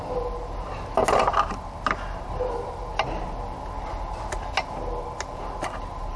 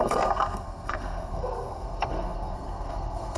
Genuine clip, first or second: first